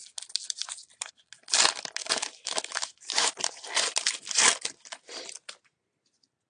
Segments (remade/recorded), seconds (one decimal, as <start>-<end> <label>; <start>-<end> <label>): 0.0-2.0 recorded; 2.0-3.3 remade; 3.3-6.5 recorded